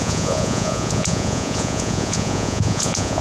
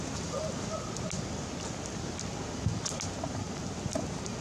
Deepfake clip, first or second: first